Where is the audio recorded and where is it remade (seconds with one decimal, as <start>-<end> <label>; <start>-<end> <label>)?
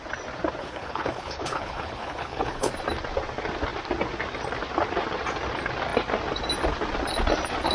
0.0-0.6 recorded; 0.6-2.7 remade; 2.7-7.7 recorded